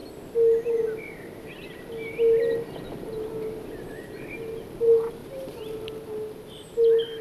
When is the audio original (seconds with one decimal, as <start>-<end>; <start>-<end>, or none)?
0.0-5.2; 5.8-7.2